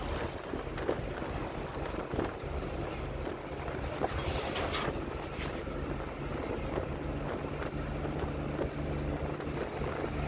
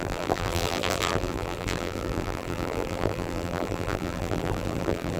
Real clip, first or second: first